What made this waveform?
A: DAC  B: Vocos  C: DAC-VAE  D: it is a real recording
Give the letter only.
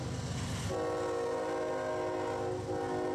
D